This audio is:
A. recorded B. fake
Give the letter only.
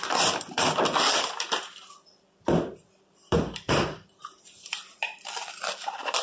B